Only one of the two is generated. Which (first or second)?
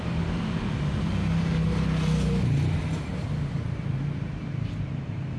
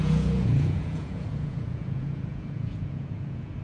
second